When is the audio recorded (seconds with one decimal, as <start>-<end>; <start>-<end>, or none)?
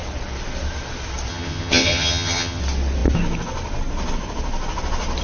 0.0-1.3; 2.6-5.2